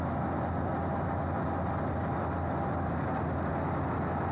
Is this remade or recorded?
recorded